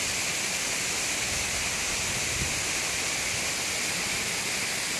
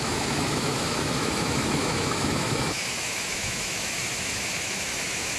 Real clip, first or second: first